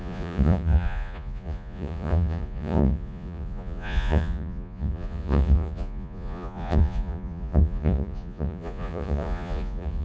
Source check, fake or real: fake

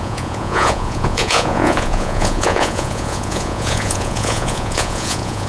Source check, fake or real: fake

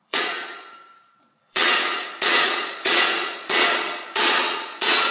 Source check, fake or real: fake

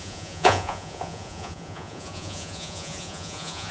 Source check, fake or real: fake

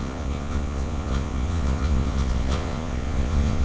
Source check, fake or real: fake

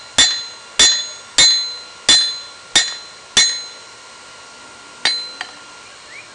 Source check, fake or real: real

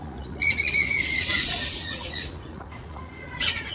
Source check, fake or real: fake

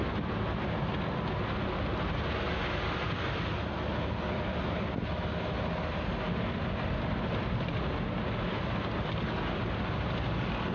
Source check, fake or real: real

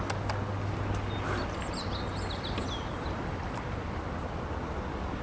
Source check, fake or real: real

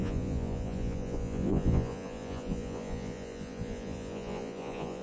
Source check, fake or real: fake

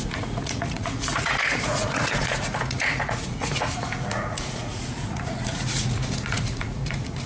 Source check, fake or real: fake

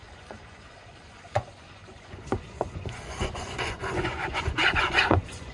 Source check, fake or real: fake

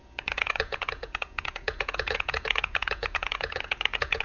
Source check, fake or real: fake